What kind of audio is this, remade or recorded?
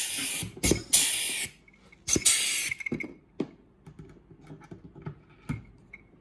recorded